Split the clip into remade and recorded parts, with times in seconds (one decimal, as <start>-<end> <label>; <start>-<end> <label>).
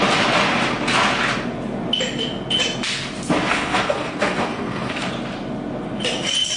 0.0-3.5 recorded; 3.5-5.1 remade; 5.1-6.6 recorded